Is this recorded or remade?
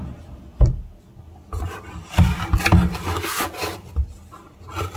recorded